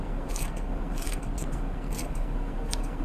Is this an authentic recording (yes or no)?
no